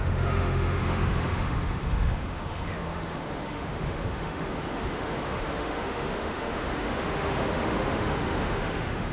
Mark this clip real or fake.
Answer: fake